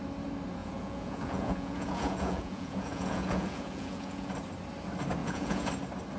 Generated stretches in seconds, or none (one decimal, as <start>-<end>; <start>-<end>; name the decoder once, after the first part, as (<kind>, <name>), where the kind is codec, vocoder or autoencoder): 0.6-4.3 (vocoder, Vocos); 5.2-5.7